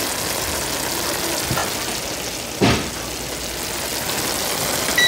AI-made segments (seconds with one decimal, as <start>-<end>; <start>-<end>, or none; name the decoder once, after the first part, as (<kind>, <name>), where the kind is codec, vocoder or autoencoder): none